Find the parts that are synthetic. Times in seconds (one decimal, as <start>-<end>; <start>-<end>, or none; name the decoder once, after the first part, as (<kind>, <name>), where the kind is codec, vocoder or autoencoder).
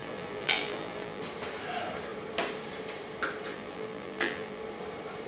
0.0-1.2 (vocoder, BigVGAN v2); 3.5-4.6